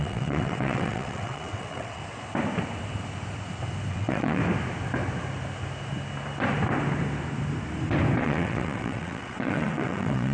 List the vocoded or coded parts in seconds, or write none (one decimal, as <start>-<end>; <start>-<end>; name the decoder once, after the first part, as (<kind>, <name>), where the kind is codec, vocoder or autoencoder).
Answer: 0.0-2.0 (vocoder, WaveNeXt); 3.9-4.4; 8.2-10.3